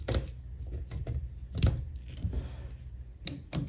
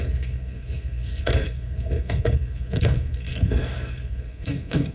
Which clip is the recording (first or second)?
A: first